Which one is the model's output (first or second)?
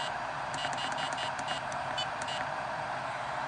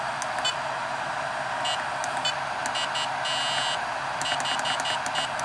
first